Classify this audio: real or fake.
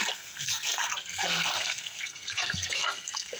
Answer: fake